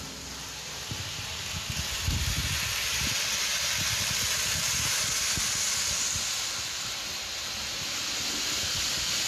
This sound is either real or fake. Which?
real